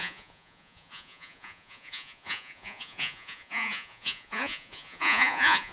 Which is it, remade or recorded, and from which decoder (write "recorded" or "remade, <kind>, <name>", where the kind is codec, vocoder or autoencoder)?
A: remade, vocoder, Vocos